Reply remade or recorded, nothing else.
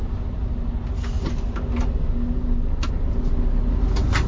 recorded